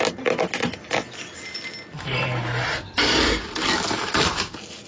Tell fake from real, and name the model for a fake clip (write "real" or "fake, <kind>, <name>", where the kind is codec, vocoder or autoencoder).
real